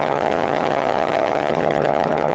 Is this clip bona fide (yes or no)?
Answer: no